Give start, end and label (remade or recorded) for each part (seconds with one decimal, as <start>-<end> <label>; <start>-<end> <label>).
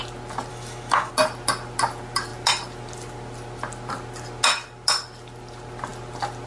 0.0-0.5 recorded; 0.5-1.1 remade; 1.1-6.5 recorded